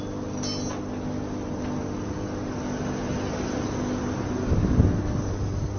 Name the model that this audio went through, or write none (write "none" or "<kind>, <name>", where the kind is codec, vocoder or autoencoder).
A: none